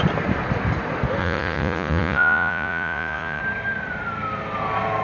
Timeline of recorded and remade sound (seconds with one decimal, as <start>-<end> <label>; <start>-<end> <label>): 0.0-1.2 recorded; 1.2-3.4 remade; 3.4-5.0 recorded